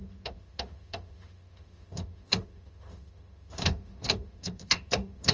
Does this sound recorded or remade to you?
remade